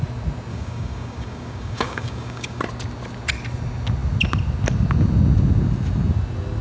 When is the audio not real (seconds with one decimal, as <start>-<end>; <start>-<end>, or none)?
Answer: 0.5-2.6